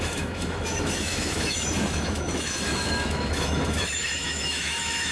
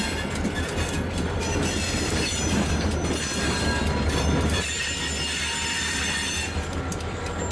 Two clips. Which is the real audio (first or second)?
second